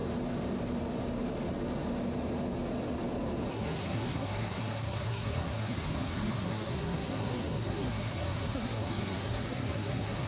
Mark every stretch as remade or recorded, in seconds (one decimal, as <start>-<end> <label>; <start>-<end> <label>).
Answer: 0.0-3.5 recorded; 3.5-10.3 remade